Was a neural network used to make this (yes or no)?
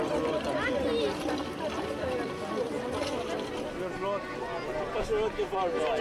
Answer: no